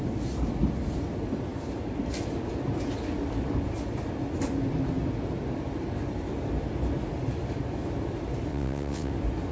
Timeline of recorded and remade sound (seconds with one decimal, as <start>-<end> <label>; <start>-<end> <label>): 0.0-8.5 recorded; 8.5-9.1 remade; 9.1-9.5 recorded